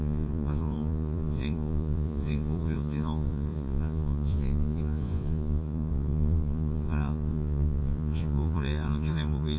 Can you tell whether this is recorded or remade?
remade